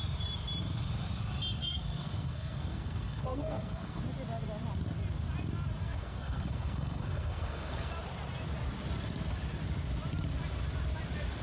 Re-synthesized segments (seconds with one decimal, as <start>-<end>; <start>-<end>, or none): 1.6-4.0; 5.8-7.9